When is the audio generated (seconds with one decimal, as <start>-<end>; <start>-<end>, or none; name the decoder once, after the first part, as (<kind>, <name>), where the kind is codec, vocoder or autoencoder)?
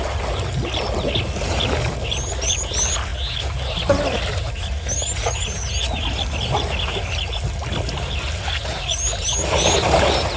none